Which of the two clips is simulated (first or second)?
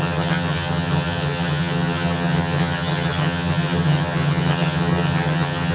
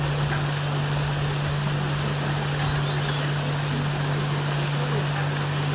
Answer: first